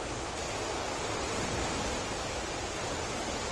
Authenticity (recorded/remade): recorded